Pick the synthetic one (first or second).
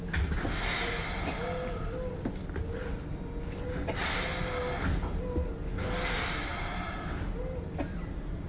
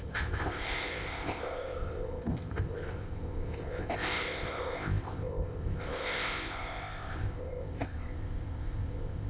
second